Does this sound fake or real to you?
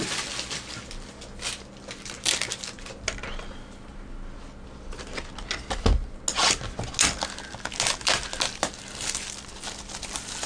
real